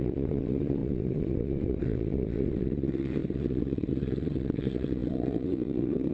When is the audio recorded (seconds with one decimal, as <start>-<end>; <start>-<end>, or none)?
none